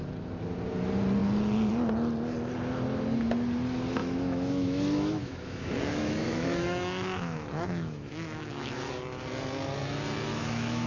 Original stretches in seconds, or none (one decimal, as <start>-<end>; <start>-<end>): 0.0-4.0; 8.9-10.3